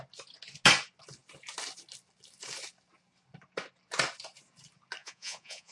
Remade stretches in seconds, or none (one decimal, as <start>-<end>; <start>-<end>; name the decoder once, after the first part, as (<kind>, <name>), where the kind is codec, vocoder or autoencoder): 5.0-5.7 (vocoder, Vocos)